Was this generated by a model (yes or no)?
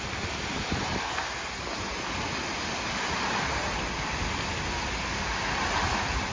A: no